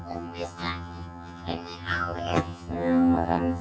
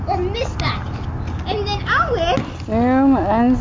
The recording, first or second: second